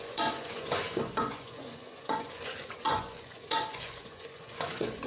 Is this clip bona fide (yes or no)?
no